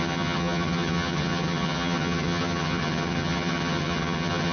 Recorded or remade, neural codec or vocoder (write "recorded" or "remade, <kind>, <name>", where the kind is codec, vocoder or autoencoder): remade, vocoder, HiFi-GAN